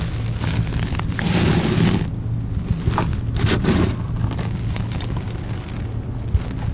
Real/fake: real